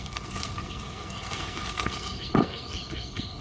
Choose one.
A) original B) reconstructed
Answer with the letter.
B